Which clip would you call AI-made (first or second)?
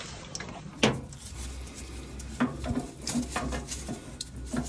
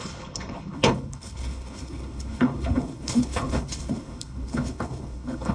second